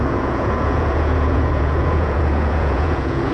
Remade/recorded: remade